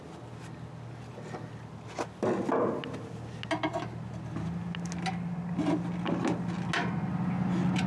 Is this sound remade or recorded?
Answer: recorded